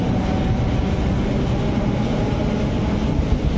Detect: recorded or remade recorded